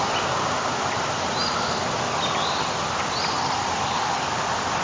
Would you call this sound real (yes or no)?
yes